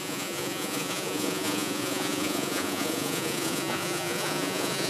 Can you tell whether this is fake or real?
fake